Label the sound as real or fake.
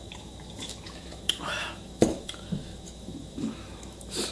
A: fake